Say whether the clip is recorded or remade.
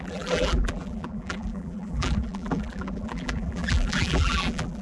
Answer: remade